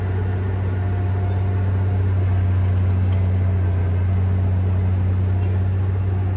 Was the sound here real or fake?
real